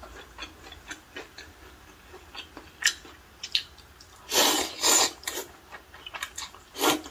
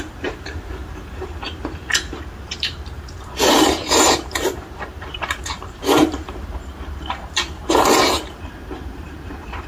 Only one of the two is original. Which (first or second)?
first